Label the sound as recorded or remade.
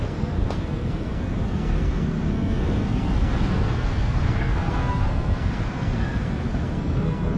remade